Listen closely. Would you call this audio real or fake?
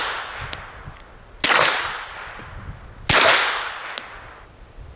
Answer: real